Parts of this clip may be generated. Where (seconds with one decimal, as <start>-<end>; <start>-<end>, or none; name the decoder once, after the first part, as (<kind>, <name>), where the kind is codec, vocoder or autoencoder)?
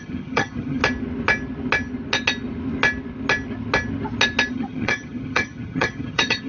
0.0-0.8 (vocoder, HiFi-GAN); 4.5-6.5